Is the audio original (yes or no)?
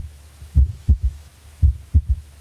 no